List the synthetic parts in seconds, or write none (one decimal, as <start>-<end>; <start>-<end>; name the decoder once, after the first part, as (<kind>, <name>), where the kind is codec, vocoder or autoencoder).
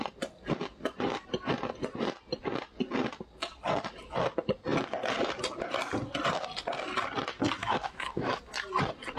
7.6-8.4 (autoencoder, DAC-VAE)